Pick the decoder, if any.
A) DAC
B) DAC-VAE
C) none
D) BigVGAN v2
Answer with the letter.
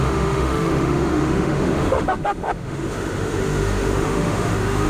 B